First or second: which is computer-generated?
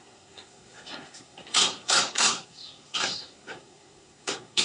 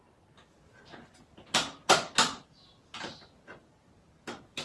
first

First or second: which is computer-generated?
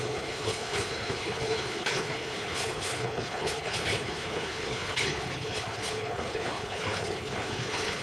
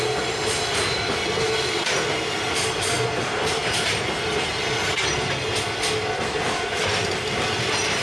first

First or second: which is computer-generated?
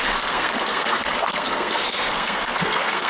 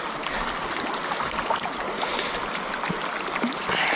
first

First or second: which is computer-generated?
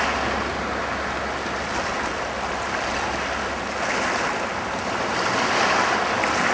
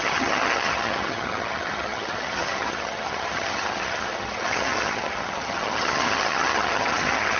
second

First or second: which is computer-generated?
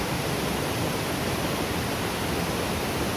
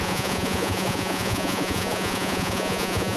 second